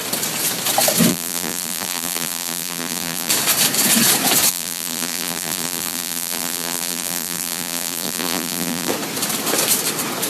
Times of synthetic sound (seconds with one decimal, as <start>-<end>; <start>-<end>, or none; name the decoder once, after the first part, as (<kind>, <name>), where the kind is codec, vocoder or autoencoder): 1.1-3.3 (vocoder, BigVGAN v2); 4.5-8.9